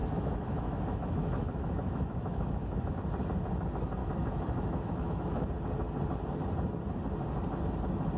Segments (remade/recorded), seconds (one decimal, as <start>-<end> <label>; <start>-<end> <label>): 0.0-2.9 remade; 2.9-4.0 recorded; 4.0-5.5 remade; 5.5-8.2 recorded